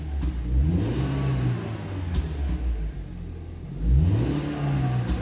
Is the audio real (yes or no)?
yes